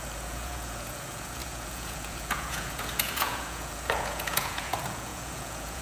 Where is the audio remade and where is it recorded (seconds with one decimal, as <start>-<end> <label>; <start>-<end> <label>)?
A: 0.0-5.8 remade